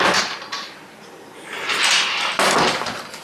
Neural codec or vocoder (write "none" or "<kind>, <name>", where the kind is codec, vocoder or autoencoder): none